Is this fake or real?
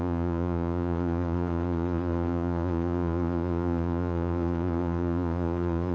fake